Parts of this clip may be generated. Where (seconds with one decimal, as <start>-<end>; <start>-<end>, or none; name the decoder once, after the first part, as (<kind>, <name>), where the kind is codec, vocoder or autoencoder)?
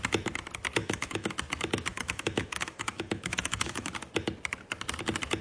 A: 0.8-1.3 (autoencoder, DAC-VAE); 1.9-3.9